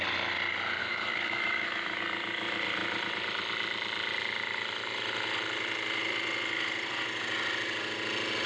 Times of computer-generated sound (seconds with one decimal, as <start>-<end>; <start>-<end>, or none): 0.8-2.0